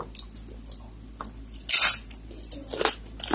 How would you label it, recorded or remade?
recorded